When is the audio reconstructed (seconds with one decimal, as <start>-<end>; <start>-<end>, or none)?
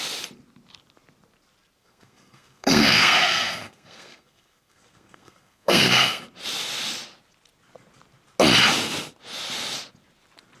1.8-6.2